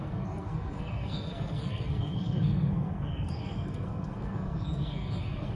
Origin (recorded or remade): remade